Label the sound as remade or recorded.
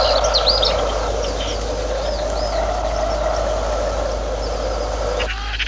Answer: recorded